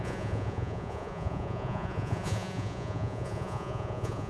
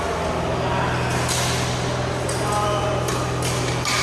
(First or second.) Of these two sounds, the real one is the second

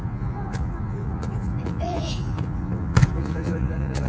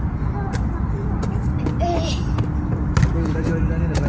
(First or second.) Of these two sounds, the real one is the second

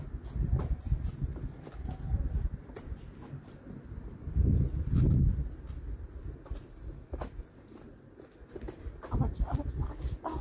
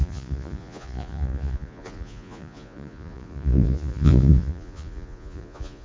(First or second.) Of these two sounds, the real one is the first